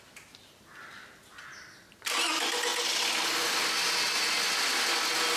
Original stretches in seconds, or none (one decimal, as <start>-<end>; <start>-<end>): 0.0-5.4